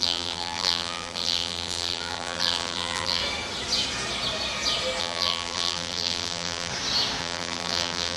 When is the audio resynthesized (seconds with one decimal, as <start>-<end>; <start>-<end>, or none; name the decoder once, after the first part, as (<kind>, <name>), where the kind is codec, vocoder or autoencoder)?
0.0-3.2 (vocoder, BigVGAN v2); 5.0-6.7; 7.2-8.2